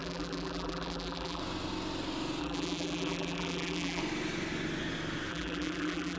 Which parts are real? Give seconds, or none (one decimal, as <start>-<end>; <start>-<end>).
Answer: 1.4-2.4; 4.0-5.3